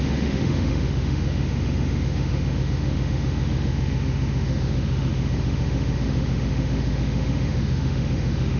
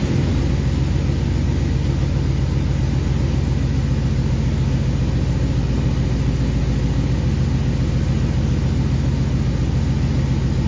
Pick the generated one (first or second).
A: first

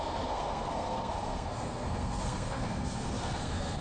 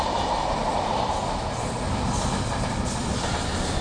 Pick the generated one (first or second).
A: first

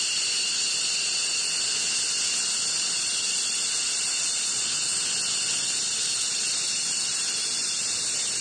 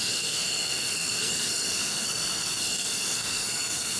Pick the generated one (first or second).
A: second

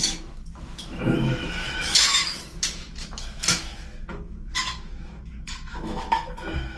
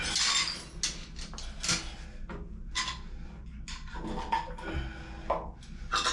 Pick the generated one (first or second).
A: first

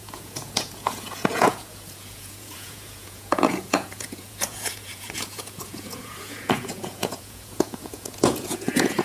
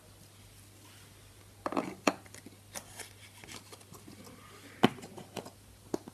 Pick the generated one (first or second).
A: first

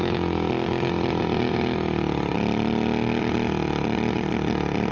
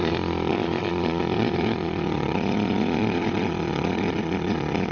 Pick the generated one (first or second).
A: second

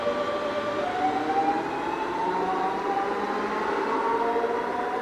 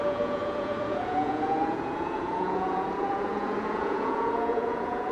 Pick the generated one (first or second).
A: second